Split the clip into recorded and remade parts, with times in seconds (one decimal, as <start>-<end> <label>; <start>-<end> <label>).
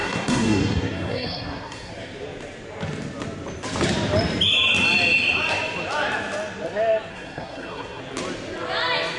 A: 0.0-1.9 remade; 1.9-7.1 recorded; 7.1-8.0 remade; 8.0-9.2 recorded